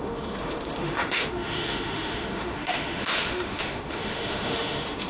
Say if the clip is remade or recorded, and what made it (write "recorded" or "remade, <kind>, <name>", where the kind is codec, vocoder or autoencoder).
remade, autoencoder, DAC-VAE